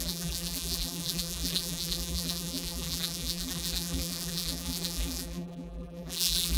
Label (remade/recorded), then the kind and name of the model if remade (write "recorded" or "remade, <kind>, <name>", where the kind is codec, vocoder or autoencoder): remade, vocoder, BigVGAN v2